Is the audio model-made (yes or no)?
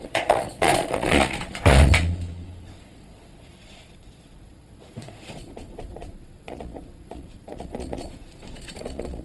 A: yes